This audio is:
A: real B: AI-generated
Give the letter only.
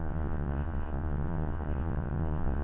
B